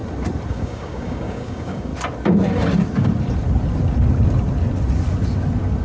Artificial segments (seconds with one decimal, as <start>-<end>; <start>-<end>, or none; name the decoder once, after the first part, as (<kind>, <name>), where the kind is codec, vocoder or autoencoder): 0.5-1.9 (codec, DAC)

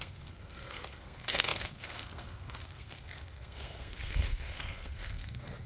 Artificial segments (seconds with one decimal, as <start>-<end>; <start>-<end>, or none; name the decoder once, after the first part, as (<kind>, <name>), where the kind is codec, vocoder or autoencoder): 0.0-5.7 (codec, SNAC)

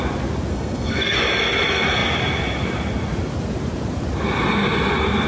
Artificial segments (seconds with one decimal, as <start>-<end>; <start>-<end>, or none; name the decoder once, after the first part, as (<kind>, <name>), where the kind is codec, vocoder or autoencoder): 0.5-1.2 (codec, SNAC)